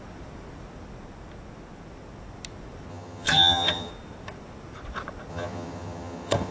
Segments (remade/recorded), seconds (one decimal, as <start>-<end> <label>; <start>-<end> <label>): 0.0-2.9 recorded; 2.9-3.9 remade; 3.9-5.3 recorded; 5.3-6.5 remade